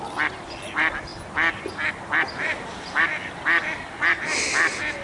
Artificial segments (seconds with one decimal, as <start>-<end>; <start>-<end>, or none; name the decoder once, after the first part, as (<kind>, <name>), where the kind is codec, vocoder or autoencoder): none